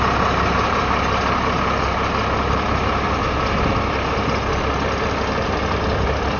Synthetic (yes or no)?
no